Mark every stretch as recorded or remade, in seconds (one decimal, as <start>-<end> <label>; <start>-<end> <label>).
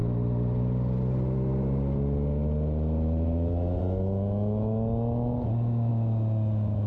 0.0-6.9 recorded